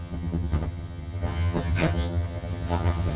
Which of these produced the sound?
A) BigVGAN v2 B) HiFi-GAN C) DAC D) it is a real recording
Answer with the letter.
B